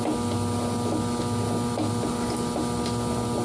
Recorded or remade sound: recorded